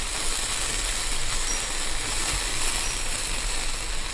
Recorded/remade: recorded